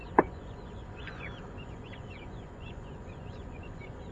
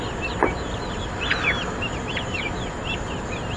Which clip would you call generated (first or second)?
first